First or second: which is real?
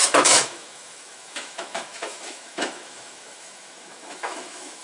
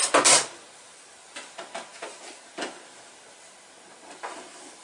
second